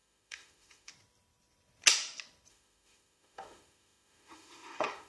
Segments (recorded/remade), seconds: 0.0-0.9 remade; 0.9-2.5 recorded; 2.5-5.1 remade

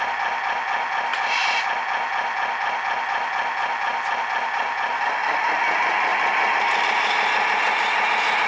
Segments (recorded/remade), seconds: 0.0-6.1 remade; 6.1-6.8 recorded; 6.8-8.5 remade

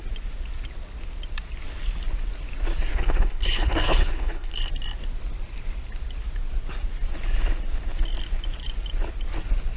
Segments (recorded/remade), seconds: 0.0-2.9 recorded; 2.9-4.7 remade; 4.7-9.8 recorded

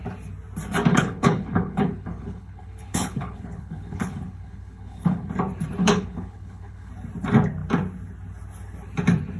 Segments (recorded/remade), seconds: 0.0-0.9 recorded; 0.9-5.3 remade; 5.3-5.8 recorded; 5.8-6.9 remade; 6.9-9.4 recorded